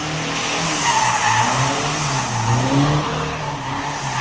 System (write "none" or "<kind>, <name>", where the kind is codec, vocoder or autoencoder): none